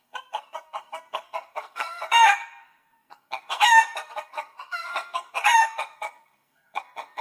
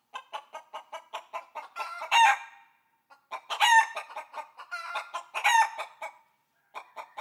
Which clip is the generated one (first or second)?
first